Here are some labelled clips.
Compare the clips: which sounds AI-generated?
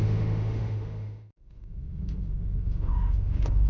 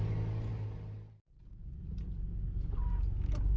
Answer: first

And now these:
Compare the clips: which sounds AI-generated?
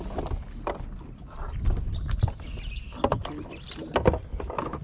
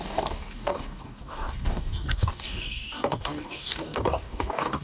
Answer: second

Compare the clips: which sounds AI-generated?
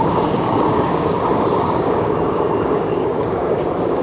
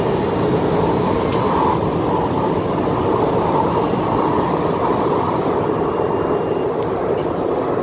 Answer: first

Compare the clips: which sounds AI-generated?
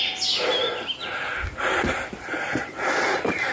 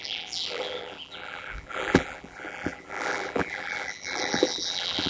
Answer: second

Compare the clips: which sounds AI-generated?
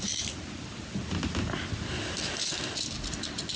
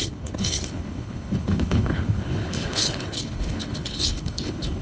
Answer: second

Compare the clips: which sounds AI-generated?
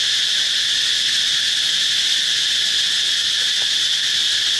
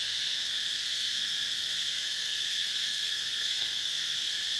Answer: second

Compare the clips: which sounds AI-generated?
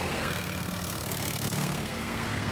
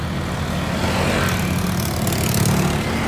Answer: first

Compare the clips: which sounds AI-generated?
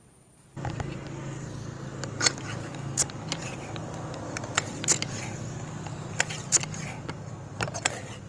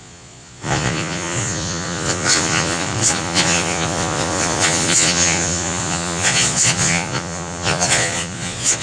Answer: second